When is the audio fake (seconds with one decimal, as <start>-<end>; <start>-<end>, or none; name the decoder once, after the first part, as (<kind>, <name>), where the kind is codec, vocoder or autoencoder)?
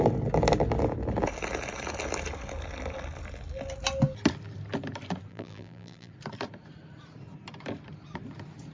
5.3-6.1 (vocoder, BigVGAN v2)